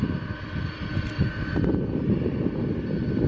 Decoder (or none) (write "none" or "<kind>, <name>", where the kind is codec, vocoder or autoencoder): none